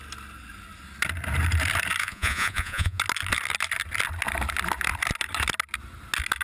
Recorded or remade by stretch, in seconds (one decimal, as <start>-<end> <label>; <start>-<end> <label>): 0.0-2.0 recorded; 2.0-3.0 remade; 3.0-6.4 recorded